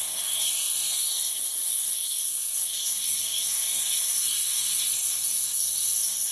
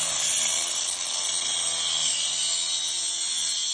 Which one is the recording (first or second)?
second